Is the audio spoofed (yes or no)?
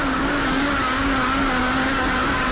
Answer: yes